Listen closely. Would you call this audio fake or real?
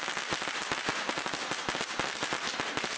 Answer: real